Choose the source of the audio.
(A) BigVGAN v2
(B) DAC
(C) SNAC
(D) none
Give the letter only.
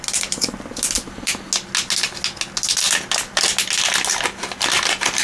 D